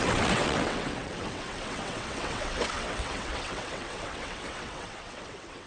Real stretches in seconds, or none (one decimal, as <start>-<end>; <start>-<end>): none